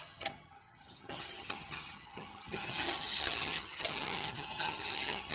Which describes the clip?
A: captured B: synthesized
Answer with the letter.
B